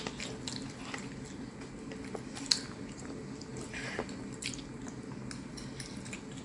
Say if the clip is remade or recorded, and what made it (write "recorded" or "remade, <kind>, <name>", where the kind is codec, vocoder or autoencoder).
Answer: recorded